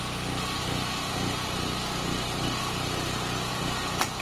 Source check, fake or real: real